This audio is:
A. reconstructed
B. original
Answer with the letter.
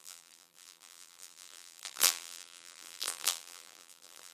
A